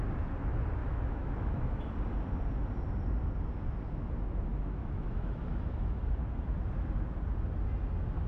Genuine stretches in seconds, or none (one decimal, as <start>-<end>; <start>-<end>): 0.0-0.8; 1.9-4.5; 6.0-8.3